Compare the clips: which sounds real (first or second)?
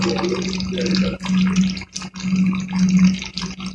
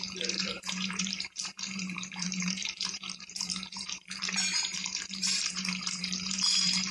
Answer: first